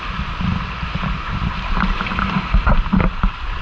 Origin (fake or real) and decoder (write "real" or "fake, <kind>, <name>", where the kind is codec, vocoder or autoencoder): real